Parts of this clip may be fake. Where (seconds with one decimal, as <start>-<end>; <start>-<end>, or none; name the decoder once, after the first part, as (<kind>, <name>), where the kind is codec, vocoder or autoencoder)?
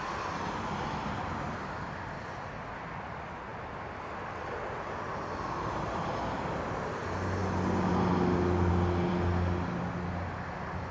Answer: none